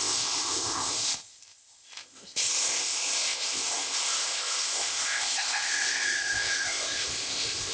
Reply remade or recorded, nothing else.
remade